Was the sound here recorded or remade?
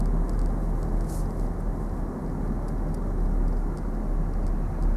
recorded